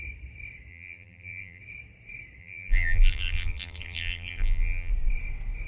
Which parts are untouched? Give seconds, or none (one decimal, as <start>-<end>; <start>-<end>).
0.0-0.7; 1.6-2.4; 4.9-5.7